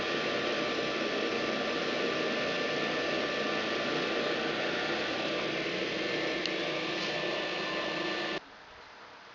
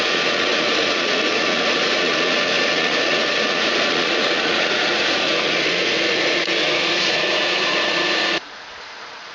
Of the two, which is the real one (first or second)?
first